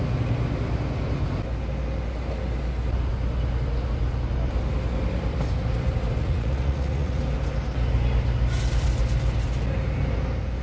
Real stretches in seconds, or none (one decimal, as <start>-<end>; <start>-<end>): 0.0-6.2; 7.2-10.6